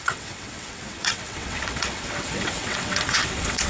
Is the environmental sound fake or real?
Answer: fake